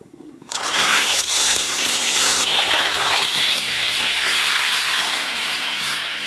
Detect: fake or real fake